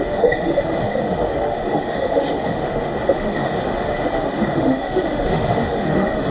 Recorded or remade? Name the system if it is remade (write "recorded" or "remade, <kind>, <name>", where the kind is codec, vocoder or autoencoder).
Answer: remade, autoencoder, DAC-VAE